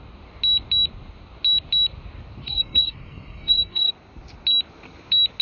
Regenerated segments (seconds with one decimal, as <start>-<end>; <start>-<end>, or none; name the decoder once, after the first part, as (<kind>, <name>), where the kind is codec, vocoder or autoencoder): 2.4-3.9 (codec, SNAC)